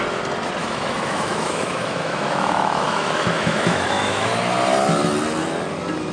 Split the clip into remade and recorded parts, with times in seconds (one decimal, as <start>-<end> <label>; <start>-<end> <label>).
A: 0.0-0.6 recorded; 0.6-4.3 remade; 4.3-6.1 recorded